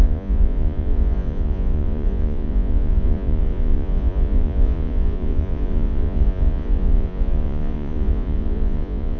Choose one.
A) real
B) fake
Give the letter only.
B